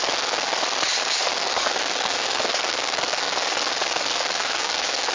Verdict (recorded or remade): remade